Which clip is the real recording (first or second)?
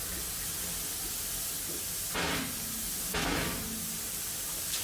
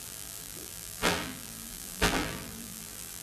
first